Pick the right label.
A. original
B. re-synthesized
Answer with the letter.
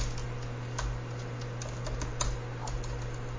A